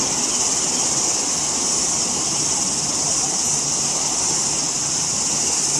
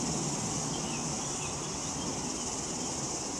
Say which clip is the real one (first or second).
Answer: second